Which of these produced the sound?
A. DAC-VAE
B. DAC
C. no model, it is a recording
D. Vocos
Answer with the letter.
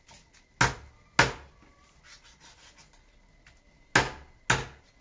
C